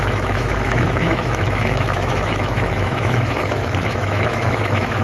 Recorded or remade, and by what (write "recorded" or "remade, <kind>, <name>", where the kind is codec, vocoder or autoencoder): remade, autoencoder, DAC-VAE